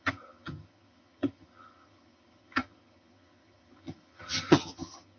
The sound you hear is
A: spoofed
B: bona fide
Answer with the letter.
A